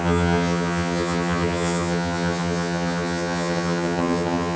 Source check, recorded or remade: remade